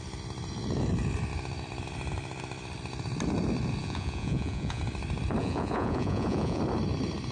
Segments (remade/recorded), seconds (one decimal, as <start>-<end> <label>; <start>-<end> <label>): 0.0-3.8 recorded; 3.8-4.8 remade; 4.8-5.4 recorded; 5.4-6.6 remade; 6.6-7.3 recorded